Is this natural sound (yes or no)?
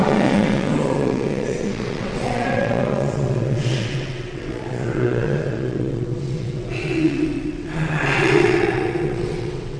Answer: no